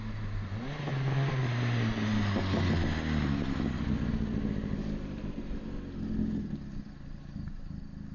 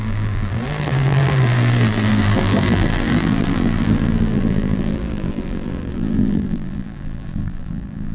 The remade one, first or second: second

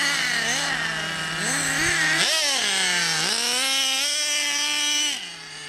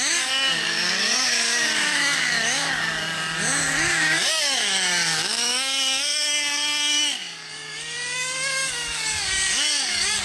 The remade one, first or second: second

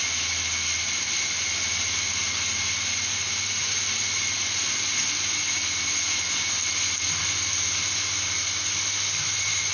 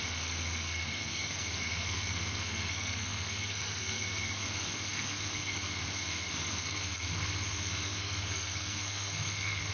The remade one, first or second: second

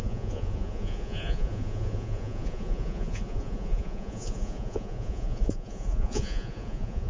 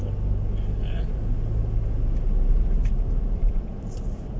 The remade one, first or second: first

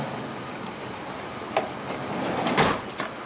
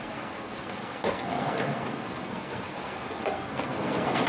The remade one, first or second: second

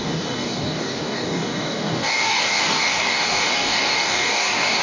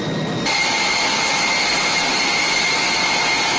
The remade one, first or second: first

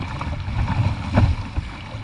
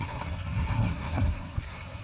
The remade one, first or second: second